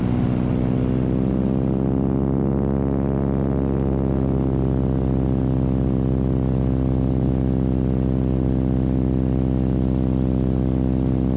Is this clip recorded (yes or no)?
yes